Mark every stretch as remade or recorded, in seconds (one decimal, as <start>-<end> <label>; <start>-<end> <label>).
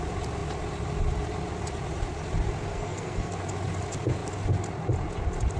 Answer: 0.0-2.7 recorded; 2.7-3.4 remade; 3.4-5.6 recorded